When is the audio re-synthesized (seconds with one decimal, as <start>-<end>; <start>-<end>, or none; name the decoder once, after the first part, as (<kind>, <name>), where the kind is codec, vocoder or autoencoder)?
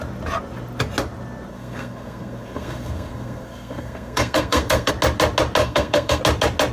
1.5-4.9 (codec, SNAC); 5.6-6.2